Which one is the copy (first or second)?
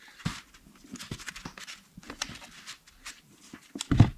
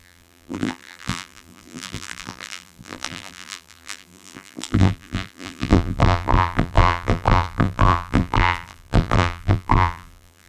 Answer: second